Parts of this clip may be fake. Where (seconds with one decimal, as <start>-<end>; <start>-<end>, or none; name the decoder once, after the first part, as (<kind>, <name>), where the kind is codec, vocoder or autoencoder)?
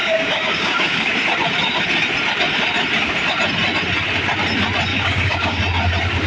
0.0-1.1 (codec, DAC); 4.9-5.6